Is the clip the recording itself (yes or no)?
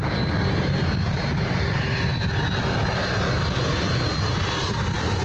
yes